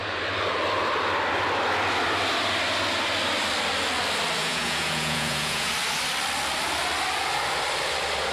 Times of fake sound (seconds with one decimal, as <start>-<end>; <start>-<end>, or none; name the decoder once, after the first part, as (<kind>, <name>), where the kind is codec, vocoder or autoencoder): 4.4-5.7 (vocoder, Vocos)